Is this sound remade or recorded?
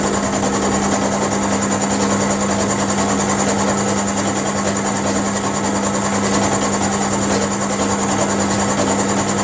recorded